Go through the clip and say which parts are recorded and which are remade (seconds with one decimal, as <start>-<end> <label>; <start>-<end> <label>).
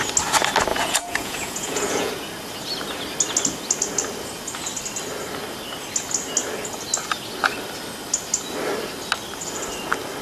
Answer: 0.0-0.7 recorded; 0.7-2.1 remade; 2.1-10.2 recorded